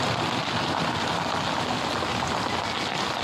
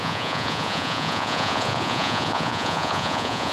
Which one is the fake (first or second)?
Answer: second